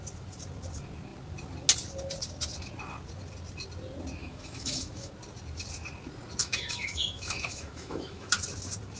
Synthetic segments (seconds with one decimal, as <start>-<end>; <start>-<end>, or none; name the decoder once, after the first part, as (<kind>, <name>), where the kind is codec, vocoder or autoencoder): 4.2-5.1 (autoencoder, DAC-VAE); 6.4-8.3